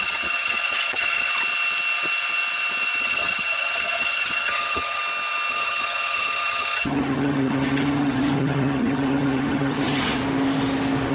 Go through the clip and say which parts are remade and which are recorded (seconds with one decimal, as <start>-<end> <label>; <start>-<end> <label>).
0.0-1.3 remade; 1.3-3.0 recorded; 3.0-5.0 remade; 5.0-5.5 recorded; 5.5-10.2 remade; 10.2-11.1 recorded

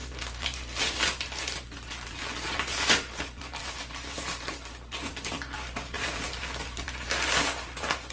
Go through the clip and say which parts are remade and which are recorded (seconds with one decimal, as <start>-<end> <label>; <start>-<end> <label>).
0.0-8.1 recorded